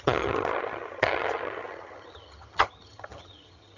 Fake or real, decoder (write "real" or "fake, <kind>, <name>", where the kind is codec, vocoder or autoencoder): fake, vocoder, HiFi-GAN